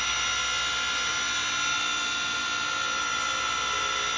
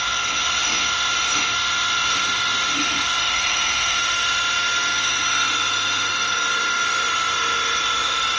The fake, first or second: second